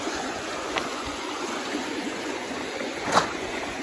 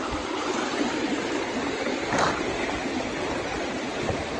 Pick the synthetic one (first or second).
first